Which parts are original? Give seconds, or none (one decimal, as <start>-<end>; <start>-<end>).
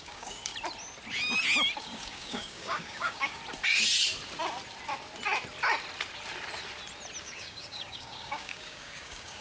0.5-1.8; 3.4-7.2